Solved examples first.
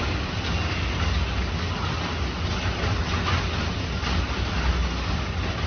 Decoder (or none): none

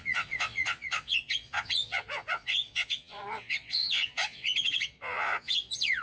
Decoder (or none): vocoder, Vocos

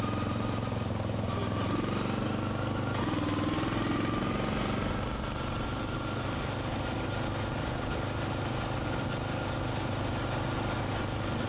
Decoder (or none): none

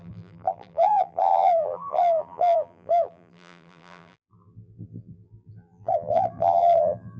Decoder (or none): vocoder, BigVGAN v2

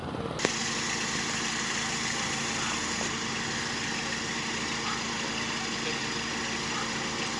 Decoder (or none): none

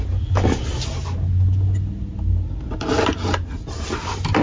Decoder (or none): none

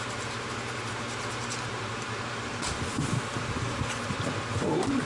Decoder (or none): vocoder, BigVGAN v2